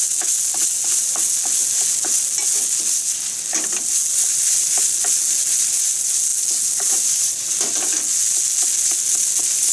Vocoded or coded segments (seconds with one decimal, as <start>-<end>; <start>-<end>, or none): none